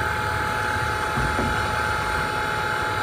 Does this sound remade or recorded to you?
recorded